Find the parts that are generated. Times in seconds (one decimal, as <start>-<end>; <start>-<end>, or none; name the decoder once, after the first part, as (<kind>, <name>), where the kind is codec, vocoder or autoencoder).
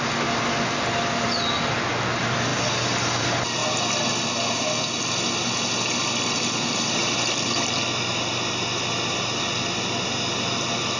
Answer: none